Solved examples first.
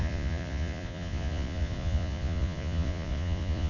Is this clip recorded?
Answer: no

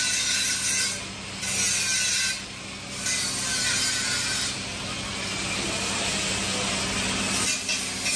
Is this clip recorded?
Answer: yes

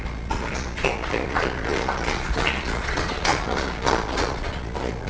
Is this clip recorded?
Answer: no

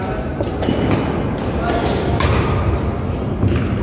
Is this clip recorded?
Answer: yes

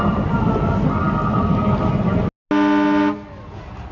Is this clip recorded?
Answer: yes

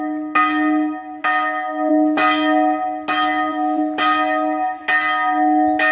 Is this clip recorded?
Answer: yes